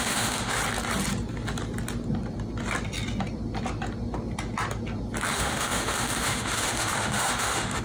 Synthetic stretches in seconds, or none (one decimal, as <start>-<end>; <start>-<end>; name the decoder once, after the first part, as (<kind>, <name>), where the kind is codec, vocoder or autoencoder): 0.0-0.6 (autoencoder, DAC-VAE); 5.3-7.8